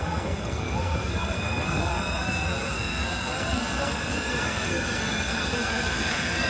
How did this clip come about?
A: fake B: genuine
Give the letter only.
A